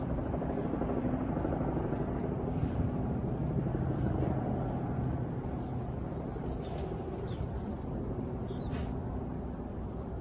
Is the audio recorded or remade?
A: remade